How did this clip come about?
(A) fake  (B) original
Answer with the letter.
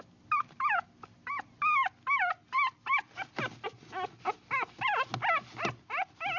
B